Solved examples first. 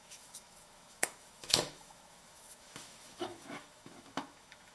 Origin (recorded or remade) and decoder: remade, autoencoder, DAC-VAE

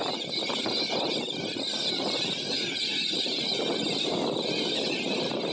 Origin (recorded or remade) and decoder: recorded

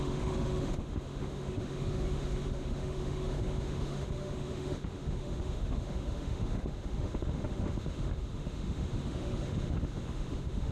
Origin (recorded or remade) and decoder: remade, autoencoder, DAC-VAE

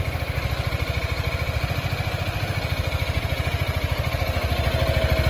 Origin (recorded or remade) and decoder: recorded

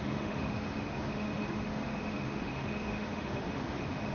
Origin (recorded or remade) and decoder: remade, autoencoder, DAC-VAE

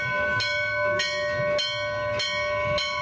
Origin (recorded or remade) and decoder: recorded